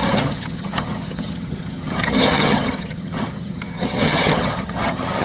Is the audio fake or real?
fake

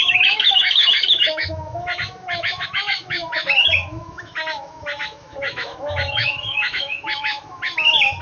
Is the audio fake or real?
fake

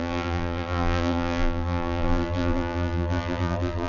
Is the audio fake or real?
fake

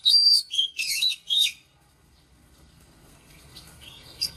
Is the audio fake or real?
fake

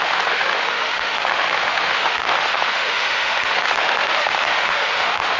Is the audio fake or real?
fake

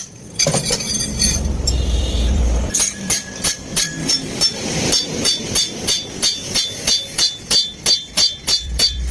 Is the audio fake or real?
fake